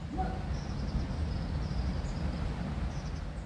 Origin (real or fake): real